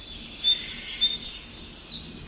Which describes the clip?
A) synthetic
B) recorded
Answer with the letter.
B